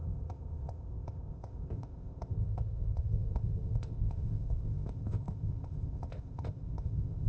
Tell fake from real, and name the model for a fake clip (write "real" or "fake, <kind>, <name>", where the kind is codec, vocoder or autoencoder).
fake, codec, ZipCodec